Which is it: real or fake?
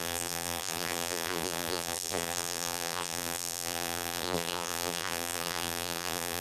fake